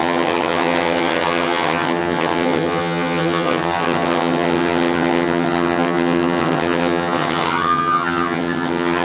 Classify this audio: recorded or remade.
remade